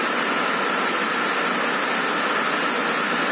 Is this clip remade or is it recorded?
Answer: recorded